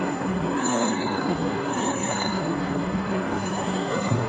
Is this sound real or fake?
fake